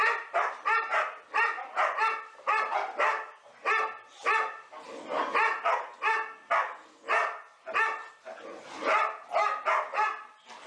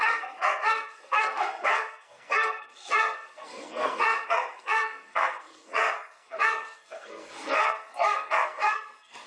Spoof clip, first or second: second